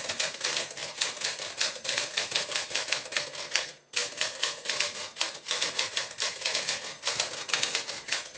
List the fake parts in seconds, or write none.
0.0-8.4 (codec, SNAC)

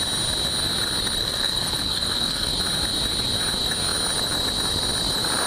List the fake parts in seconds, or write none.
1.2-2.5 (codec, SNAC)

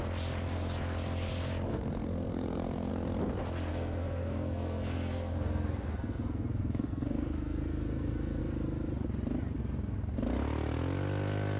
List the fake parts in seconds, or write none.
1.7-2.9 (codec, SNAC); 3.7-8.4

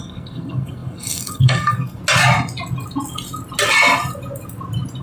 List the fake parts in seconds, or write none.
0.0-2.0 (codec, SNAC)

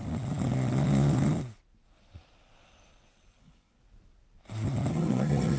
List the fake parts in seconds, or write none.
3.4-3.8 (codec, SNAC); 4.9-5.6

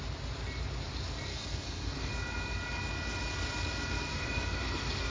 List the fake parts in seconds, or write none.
1.3-2.1 (codec, SNAC); 4.1-5.1

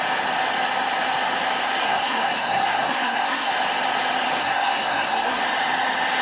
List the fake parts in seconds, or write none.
1.8-3.5 (codec, SNAC); 4.4-5.4

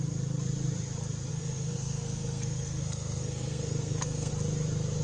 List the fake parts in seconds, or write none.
1.3-4.3 (codec, SNAC)